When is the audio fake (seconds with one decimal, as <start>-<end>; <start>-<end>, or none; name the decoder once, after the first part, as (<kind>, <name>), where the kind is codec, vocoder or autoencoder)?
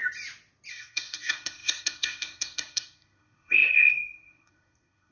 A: 0.7-5.1 (codec, SNAC)